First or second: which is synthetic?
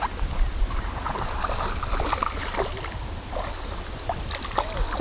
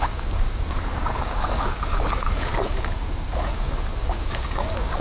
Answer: second